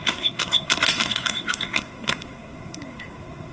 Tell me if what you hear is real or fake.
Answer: fake